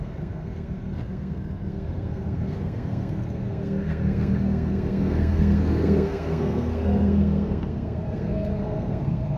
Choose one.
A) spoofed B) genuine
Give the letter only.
A